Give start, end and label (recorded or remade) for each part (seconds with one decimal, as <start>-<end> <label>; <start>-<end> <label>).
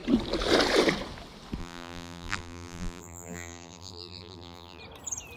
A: 0.0-1.6 recorded; 1.6-4.8 remade; 4.8-5.4 recorded